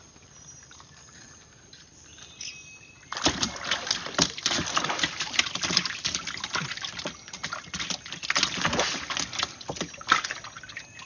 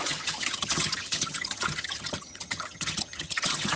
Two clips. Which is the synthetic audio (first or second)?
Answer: second